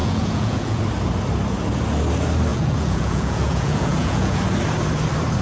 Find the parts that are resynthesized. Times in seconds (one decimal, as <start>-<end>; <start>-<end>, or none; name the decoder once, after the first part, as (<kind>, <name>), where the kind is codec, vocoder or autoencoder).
0.0-0.8 (vocoder, Vocos); 2.5-4.4